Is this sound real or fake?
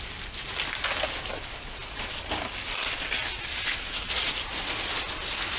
real